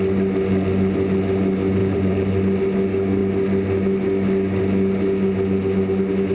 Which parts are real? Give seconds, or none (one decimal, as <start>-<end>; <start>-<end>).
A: 0.0-1.8; 2.3-6.3